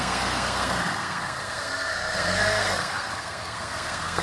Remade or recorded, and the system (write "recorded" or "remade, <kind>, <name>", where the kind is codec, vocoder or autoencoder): remade, codec, SNAC